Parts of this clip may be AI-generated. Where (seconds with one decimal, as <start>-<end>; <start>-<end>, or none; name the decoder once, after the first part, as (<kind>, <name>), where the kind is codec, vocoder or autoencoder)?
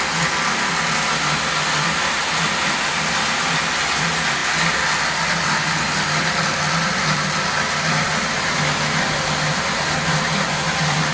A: none